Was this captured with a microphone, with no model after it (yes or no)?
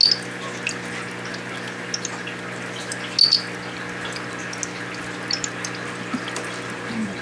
yes